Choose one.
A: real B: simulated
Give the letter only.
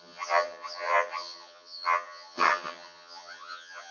B